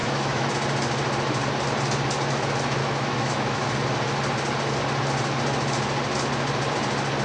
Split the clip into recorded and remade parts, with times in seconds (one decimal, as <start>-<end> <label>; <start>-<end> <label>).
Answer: 0.0-0.5 remade; 0.5-2.8 recorded; 2.8-3.7 remade; 3.7-7.2 recorded